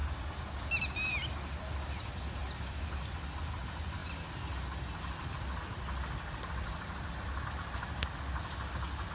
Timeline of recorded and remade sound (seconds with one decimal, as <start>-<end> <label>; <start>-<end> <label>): 0.0-9.1 recorded